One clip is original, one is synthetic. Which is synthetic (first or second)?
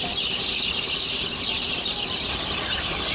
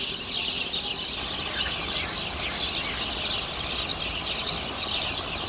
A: first